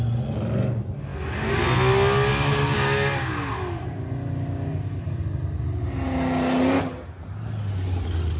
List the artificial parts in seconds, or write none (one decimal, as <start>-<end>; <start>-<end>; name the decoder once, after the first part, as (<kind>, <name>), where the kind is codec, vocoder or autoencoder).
2.3-3.3 (codec, DAC)